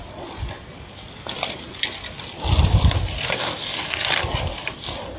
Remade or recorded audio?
recorded